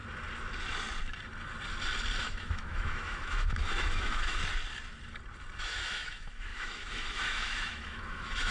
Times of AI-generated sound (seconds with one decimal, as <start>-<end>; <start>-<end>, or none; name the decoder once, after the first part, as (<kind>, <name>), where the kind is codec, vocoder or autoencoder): 2.2-4.4 (autoencoder, DAC-VAE); 5.6-8.5